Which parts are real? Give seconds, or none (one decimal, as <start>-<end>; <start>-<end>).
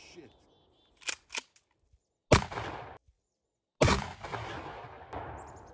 0.0-5.7